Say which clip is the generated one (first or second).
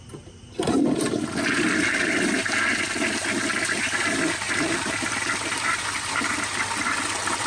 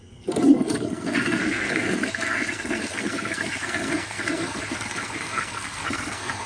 second